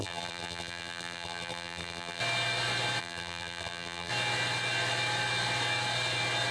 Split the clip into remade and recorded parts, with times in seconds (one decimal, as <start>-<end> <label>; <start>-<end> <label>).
0.0-2.2 remade; 2.2-3.0 recorded; 3.0-4.1 remade; 4.1-6.5 recorded